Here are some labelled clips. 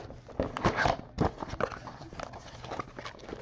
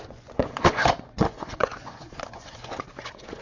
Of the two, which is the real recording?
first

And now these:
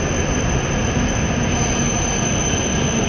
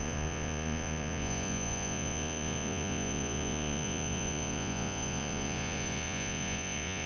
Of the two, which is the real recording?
first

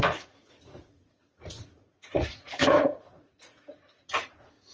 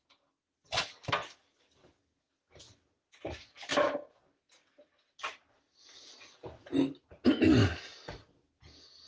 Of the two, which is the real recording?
second